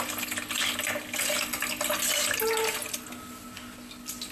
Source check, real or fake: real